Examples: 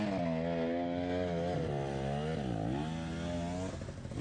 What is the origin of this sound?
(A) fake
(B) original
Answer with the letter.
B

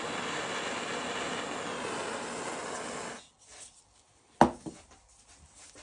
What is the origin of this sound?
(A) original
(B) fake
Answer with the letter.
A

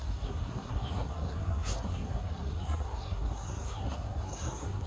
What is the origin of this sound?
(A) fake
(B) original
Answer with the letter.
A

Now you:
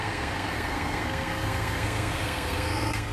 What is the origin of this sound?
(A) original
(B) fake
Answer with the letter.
B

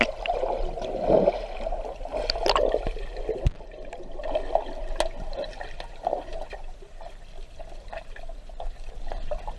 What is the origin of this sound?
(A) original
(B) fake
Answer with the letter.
A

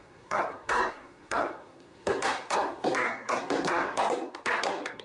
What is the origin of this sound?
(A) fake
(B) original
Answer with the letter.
A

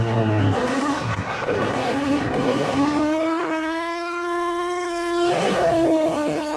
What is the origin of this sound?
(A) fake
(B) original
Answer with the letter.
A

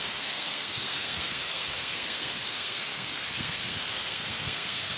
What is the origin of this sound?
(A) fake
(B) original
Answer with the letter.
A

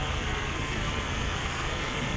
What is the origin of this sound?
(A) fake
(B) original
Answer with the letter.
A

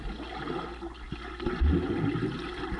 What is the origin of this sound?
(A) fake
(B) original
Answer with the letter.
B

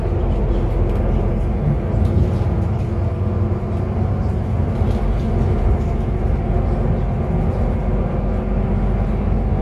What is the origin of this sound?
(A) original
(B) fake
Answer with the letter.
A